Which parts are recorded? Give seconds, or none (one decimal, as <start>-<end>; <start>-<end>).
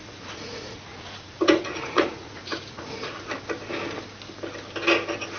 3.1-5.4